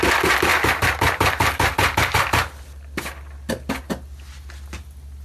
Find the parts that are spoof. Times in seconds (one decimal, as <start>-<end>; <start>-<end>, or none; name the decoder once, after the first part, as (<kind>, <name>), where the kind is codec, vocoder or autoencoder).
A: 0.5-2.6 (vocoder, BigVGAN v2)